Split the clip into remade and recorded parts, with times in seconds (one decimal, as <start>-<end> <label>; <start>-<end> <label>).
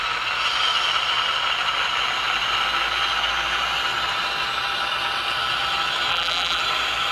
0.0-6.1 recorded; 6.1-6.6 remade; 6.6-7.1 recorded